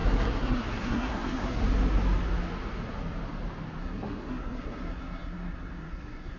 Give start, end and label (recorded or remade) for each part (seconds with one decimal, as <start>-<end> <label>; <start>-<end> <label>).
0.0-1.6 remade; 1.6-3.8 recorded; 3.8-6.4 remade